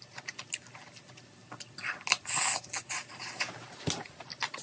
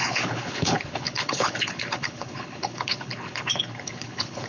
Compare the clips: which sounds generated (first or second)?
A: second